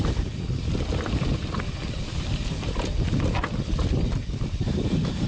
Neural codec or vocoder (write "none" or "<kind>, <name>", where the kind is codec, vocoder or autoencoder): none